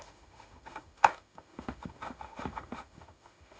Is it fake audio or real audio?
fake